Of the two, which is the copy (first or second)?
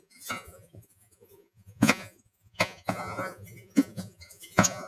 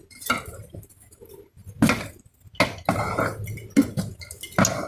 first